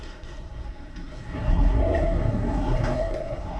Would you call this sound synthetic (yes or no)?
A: yes